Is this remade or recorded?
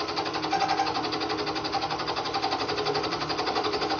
recorded